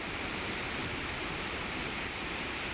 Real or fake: fake